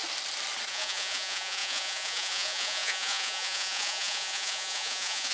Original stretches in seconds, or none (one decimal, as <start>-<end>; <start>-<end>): 0.0-0.7